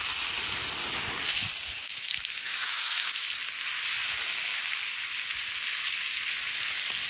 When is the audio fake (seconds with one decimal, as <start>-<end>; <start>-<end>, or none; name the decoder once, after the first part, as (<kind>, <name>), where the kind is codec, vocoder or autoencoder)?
1.8-3.3 (autoencoder, DAC-VAE)